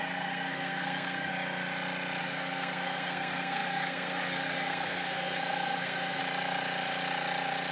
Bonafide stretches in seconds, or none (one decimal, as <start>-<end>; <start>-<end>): 1.3-2.2; 6.2-7.7